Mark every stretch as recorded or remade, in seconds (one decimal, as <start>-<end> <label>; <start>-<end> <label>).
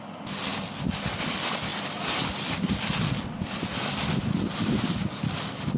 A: 0.0-5.8 recorded